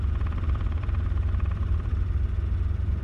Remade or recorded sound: remade